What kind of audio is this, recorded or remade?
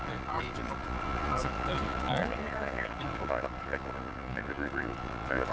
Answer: remade